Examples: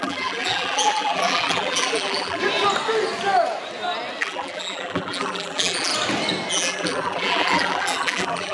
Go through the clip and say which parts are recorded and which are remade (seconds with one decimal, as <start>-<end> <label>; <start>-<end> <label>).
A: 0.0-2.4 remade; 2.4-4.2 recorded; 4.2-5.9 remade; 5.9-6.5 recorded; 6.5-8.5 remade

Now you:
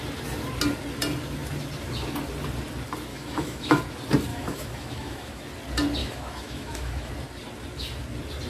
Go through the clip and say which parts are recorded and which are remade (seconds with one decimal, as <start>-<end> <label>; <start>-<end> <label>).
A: 0.0-3.1 recorded; 3.1-3.8 remade; 3.8-4.3 recorded; 4.3-5.4 remade; 5.4-6.0 recorded; 6.0-7.1 remade; 7.1-8.5 recorded

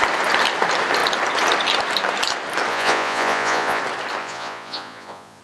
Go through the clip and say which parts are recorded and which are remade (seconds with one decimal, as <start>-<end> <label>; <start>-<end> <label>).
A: 0.0-2.7 recorded; 2.7-3.8 remade; 3.8-4.2 recorded; 4.2-5.4 remade